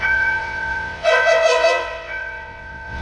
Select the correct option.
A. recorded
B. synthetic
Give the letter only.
B